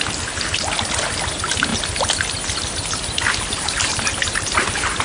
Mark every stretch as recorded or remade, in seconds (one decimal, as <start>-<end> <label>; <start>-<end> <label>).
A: 0.0-5.0 recorded